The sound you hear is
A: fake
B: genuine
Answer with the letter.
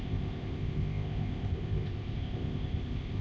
A